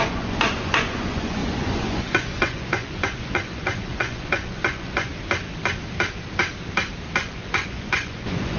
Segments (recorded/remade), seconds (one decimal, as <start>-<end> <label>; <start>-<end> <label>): 0.0-5.1 remade; 5.1-7.2 recorded; 7.2-8.6 remade